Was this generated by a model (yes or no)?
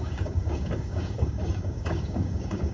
yes